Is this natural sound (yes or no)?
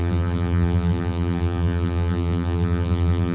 no